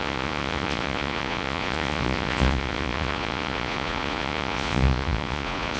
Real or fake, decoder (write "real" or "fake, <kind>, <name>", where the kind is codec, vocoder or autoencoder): fake, vocoder, Vocos